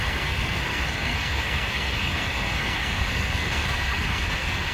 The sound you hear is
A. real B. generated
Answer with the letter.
B